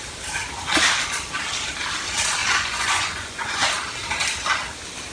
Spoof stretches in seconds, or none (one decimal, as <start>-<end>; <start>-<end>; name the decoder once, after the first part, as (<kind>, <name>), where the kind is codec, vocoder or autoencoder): 2.4-3.6 (vocoder, Vocos)